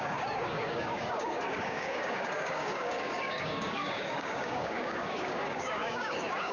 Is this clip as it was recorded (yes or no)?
no